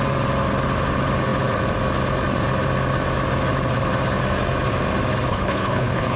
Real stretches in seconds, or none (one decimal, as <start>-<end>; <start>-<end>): 0.0-5.3